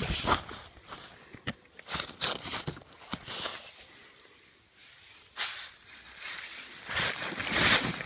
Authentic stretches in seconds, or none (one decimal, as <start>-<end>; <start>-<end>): 0.0-8.1